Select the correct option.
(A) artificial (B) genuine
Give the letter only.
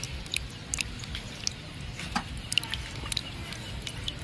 B